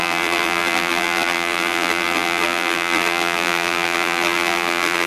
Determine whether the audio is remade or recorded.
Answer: remade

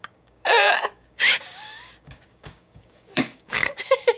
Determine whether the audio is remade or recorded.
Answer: remade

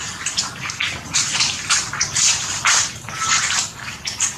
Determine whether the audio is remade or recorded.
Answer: recorded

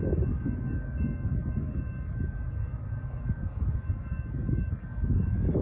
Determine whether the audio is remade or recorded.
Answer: remade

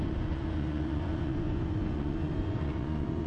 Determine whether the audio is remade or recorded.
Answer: remade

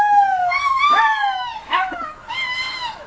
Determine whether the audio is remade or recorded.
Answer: remade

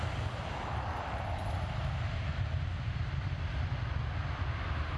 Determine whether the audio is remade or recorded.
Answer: recorded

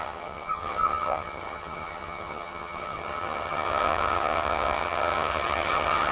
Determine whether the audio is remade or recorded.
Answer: remade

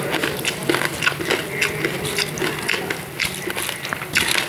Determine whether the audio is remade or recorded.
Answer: recorded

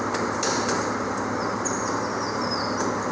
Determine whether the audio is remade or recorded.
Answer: recorded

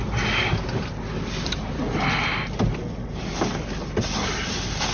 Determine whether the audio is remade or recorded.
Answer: recorded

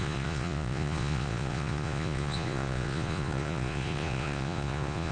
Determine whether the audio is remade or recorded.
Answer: remade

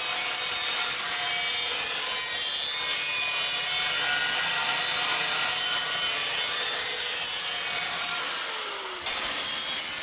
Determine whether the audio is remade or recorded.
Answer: recorded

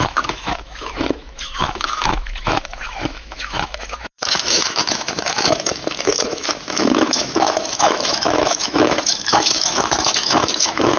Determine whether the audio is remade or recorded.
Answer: remade